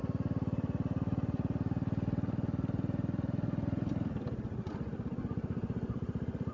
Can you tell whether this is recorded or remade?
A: recorded